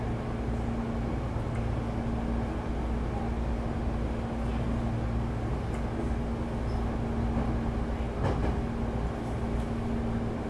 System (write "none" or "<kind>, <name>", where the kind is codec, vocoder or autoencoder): none